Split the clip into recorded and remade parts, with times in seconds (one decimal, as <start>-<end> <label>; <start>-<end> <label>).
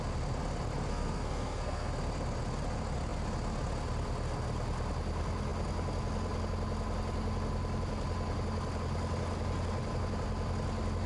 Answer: 0.0-0.9 recorded; 0.9-1.9 remade; 1.9-11.1 recorded